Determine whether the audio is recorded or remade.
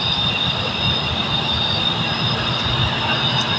recorded